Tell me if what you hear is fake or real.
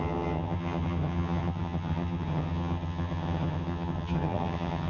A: fake